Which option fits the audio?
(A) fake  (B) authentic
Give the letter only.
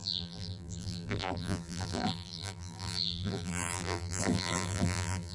A